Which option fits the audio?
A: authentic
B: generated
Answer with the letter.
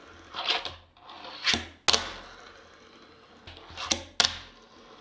A